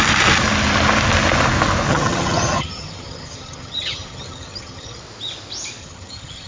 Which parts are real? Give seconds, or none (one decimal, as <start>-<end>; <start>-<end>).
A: 0.0-1.9; 5.0-5.8